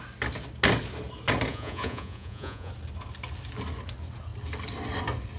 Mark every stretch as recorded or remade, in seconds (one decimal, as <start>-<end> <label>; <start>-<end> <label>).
0.0-1.5 recorded; 1.5-2.7 remade; 2.7-5.4 recorded